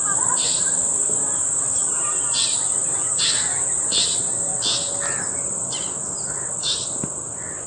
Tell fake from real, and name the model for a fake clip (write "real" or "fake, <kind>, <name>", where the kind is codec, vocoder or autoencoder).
real